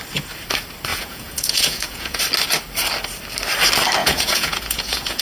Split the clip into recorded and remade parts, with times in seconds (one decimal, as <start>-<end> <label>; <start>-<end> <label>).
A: 0.0-0.9 recorded; 0.9-2.2 remade; 2.2-4.0 recorded; 4.0-5.2 remade